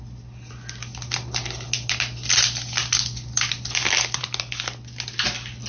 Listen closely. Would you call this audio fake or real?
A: real